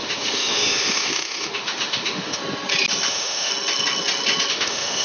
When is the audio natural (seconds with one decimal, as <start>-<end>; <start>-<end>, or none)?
2.4-3.1; 3.5-4.5